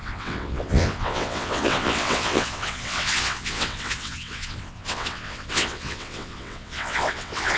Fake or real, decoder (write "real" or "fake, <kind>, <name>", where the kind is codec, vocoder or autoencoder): fake, vocoder, WaveNeXt